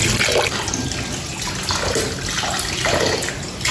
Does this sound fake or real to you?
real